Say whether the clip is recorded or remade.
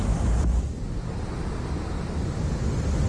recorded